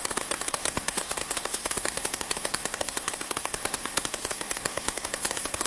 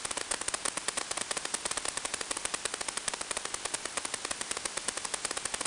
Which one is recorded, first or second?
second